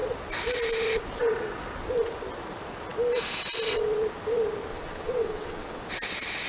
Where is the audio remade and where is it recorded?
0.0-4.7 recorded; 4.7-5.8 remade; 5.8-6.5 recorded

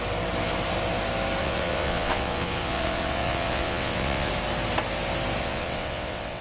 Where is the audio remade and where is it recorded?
0.0-1.4 recorded; 1.4-4.3 remade; 4.3-5.4 recorded; 5.4-6.4 remade